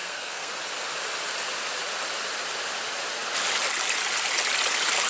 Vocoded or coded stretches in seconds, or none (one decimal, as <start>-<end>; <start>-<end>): 0.0-0.5